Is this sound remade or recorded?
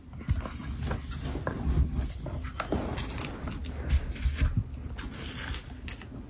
recorded